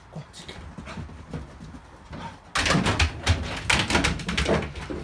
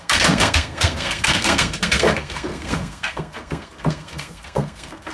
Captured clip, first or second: first